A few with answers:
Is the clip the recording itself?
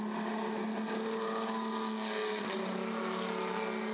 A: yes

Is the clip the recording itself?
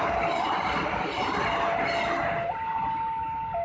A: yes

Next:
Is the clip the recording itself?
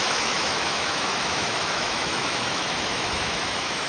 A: no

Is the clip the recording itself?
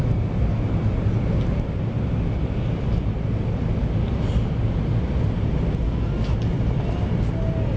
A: yes